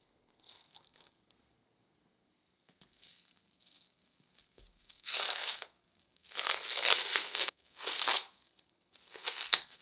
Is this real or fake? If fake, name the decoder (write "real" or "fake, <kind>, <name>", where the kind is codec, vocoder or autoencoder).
fake, codec, SNAC